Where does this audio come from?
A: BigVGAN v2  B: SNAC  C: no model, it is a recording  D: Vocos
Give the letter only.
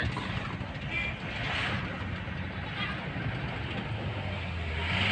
C